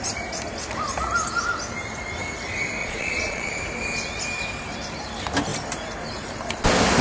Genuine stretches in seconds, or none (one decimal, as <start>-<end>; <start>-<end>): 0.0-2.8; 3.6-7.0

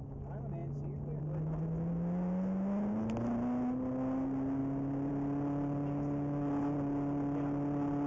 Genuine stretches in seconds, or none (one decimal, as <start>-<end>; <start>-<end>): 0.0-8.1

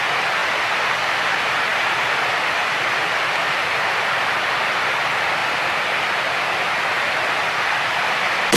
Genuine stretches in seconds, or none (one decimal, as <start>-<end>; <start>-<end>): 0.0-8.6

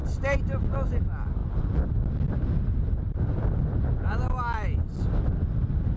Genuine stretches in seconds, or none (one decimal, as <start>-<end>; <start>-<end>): 0.0-6.0

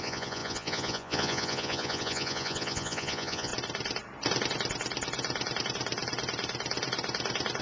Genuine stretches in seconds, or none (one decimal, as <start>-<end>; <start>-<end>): 3.5-7.6